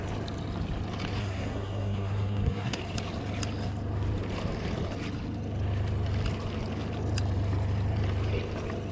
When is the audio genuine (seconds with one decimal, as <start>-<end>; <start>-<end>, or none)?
0.0-1.2; 2.8-8.9

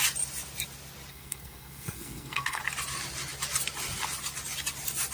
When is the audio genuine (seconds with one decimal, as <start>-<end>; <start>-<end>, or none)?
0.0-1.1; 2.6-5.1

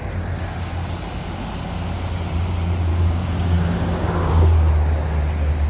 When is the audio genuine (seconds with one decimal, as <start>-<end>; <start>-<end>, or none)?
0.0-2.9; 4.7-5.7

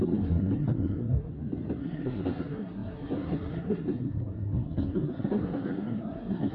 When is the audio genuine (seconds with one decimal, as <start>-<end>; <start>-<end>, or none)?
1.3-1.8

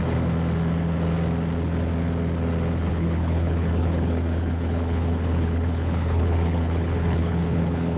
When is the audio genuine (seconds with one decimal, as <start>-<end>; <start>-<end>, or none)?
0.0-2.9

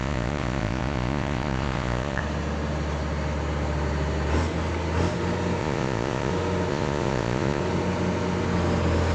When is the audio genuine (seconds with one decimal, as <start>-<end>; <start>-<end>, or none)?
2.2-5.6; 6.3-6.7; 7.6-9.1

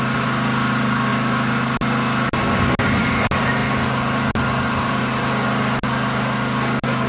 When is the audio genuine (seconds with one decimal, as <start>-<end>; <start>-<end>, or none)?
0.0-7.1